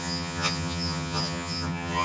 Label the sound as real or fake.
fake